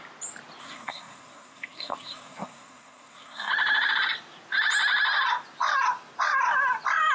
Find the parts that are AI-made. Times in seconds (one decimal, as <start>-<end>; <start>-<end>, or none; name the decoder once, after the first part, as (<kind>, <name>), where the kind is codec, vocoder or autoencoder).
0.6-3.5 (codec, SNAC)